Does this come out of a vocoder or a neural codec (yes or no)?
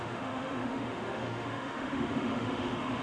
yes